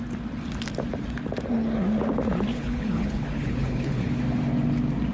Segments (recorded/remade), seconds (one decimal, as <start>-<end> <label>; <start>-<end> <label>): 0.0-2.5 recorded; 2.5-4.2 remade; 4.2-5.1 recorded

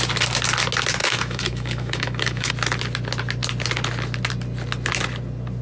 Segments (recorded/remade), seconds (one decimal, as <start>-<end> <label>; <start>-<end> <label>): 0.0-1.0 recorded; 1.0-2.5 remade; 2.5-5.6 recorded

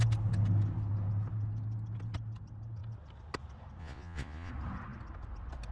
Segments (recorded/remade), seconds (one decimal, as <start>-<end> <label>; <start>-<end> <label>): 0.0-3.8 recorded; 3.8-4.5 remade; 4.5-5.7 recorded

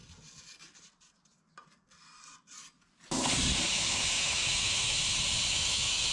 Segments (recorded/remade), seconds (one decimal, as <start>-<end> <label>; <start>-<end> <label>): 0.0-3.7 recorded; 3.7-5.0 remade; 5.0-5.5 recorded; 5.5-6.1 remade